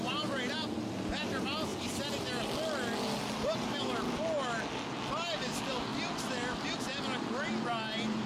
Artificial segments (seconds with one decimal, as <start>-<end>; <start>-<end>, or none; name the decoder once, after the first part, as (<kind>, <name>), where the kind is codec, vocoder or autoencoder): none